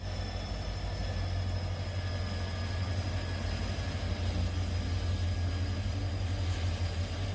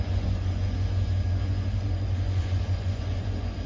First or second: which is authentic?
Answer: first